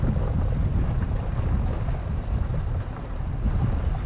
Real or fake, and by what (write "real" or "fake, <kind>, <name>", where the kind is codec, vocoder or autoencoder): real